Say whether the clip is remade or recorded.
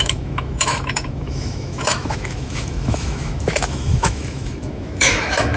remade